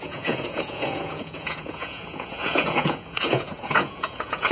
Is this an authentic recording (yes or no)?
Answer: no